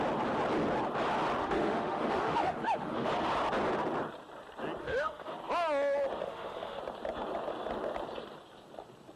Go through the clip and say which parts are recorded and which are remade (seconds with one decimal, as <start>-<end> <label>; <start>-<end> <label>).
0.0-1.4 recorded; 1.4-3.1 remade; 3.1-4.8 recorded; 4.8-5.3 remade; 5.3-6.2 recorded; 6.2-6.8 remade; 6.8-9.2 recorded